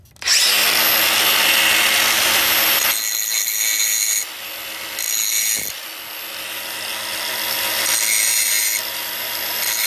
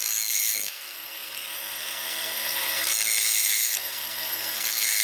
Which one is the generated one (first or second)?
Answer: second